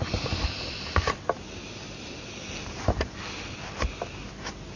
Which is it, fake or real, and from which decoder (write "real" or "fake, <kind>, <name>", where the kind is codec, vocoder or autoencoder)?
real